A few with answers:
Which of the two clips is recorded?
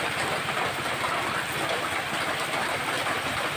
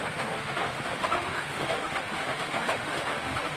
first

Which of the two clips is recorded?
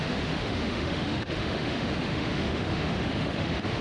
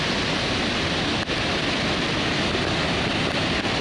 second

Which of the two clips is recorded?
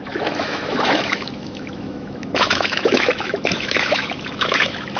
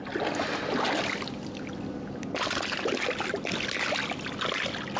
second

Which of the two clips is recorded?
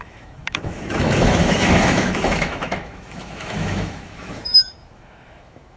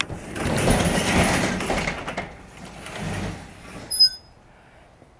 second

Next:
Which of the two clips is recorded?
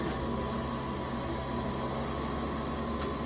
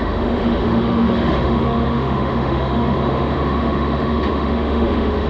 first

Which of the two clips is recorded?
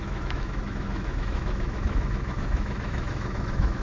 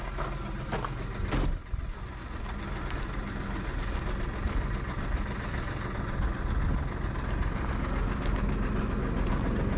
second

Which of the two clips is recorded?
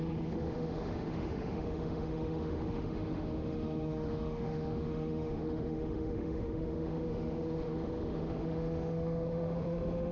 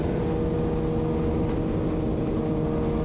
second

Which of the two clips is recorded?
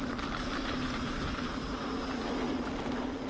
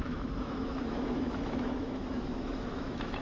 first